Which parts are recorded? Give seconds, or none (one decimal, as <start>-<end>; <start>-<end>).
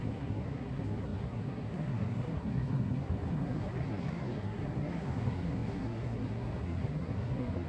none